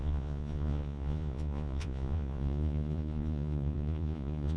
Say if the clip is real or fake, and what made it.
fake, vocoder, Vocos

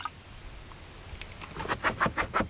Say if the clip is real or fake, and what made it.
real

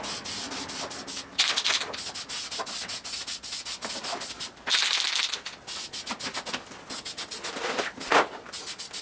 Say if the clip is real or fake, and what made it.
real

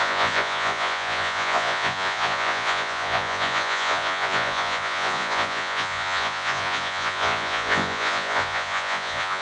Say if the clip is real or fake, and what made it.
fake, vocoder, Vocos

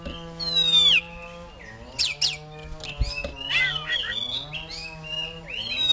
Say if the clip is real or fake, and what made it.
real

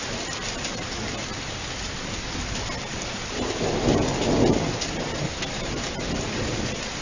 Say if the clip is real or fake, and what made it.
real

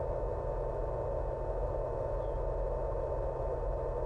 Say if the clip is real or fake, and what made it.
real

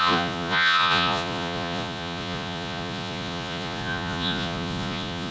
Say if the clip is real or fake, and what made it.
fake, vocoder, Vocos